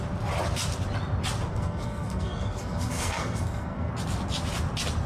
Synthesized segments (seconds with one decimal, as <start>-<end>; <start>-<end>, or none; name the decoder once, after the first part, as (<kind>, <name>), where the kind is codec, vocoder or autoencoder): 1.5-3.9 (codec, SNAC)